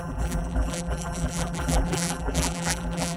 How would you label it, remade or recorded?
remade